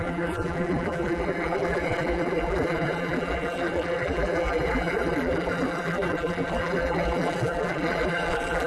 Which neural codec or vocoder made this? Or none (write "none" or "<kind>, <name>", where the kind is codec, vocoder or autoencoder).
vocoder, BigVGAN v2